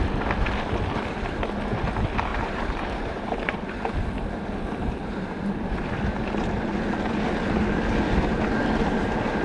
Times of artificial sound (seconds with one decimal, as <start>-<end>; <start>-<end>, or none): 2.3-3.8